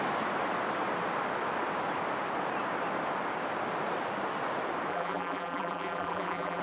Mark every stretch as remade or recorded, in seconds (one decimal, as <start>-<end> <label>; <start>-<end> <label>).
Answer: 0.0-4.9 recorded; 4.9-6.6 remade